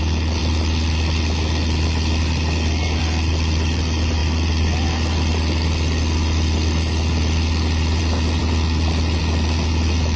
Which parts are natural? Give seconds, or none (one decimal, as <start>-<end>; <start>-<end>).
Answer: 0.0-10.2